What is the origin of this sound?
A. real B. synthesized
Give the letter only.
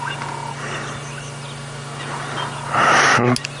A